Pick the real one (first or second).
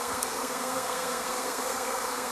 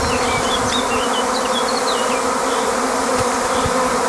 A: second